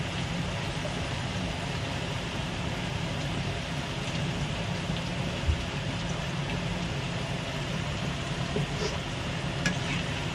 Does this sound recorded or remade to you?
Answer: remade